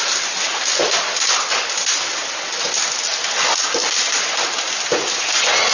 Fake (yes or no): no